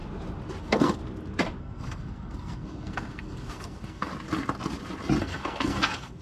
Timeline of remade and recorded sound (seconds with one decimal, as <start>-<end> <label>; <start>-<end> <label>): 0.0-0.6 recorded; 0.6-1.0 remade; 1.0-1.6 recorded; 1.6-4.1 remade; 4.1-5.2 recorded; 5.2-6.2 remade